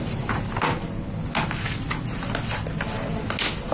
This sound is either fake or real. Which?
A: real